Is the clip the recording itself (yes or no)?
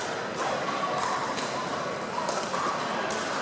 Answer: yes